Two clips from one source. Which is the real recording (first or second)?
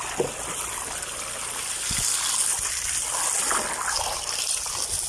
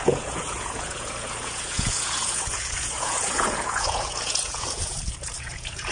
first